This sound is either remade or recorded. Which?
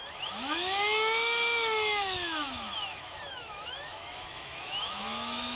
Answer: remade